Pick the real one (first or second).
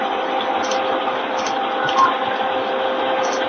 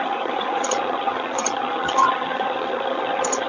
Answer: first